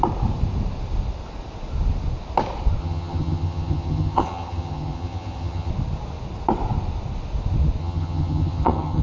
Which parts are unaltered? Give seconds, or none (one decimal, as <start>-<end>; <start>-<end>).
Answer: 0.0-2.8; 5.7-7.8